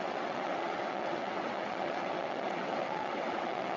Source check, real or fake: fake